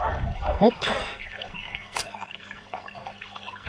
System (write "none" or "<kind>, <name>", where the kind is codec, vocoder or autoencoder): codec, SNAC